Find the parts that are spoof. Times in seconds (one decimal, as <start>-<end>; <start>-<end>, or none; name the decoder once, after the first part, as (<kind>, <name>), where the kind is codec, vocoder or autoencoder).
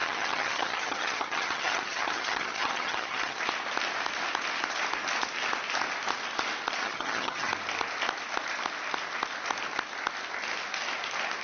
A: 0.0-3.4 (vocoder, HiFi-GAN); 6.8-7.5